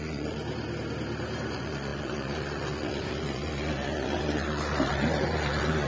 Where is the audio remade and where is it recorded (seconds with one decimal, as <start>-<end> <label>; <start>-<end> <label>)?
0.0-0.4 remade; 0.4-1.5 recorded; 1.5-5.9 remade